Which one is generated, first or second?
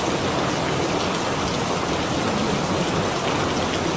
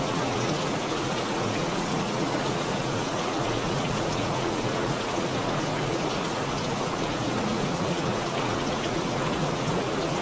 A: second